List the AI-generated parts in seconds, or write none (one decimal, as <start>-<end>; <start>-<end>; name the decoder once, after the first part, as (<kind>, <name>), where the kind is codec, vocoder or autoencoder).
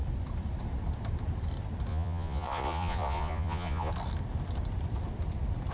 1.9-3.9 (vocoder, Vocos)